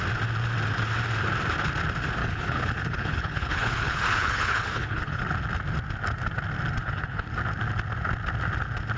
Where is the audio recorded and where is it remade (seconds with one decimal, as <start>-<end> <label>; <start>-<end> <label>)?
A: 0.0-2.2 recorded; 2.2-5.2 remade; 5.2-6.8 recorded; 6.8-7.3 remade; 7.3-9.0 recorded